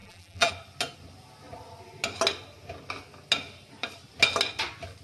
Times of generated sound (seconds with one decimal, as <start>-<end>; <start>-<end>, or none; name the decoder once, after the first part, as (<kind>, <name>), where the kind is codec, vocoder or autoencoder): 0.0-0.5 (vocoder, BigVGAN v2)